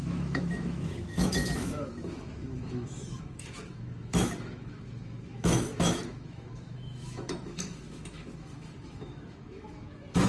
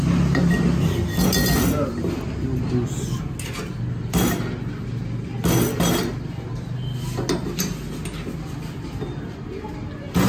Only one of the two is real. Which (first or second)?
second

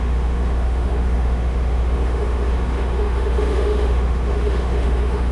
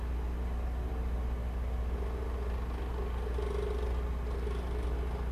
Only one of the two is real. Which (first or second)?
second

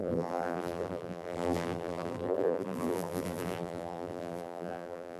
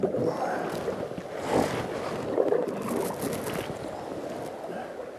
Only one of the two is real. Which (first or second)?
second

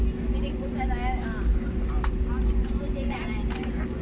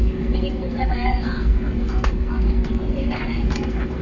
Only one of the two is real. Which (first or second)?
first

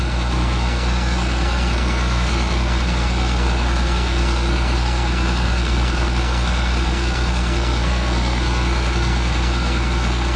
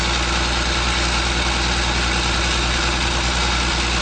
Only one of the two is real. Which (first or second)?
second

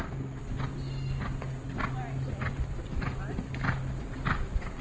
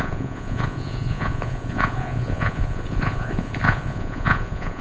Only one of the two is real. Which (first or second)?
first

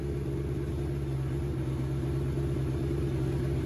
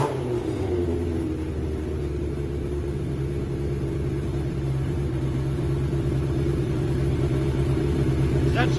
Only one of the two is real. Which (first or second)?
first